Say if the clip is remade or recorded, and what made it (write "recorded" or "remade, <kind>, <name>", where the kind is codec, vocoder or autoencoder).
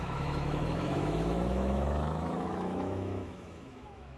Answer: remade, autoencoder, DAC-VAE